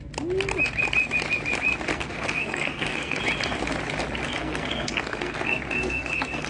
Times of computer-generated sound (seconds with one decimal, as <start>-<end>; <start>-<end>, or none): 1.9-3.2; 4.2-6.5